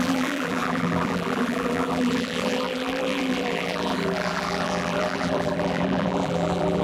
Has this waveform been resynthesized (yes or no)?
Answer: yes